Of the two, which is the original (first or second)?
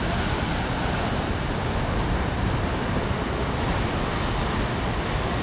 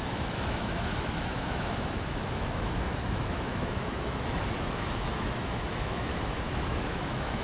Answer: first